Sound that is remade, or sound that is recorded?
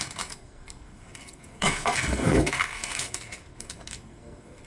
remade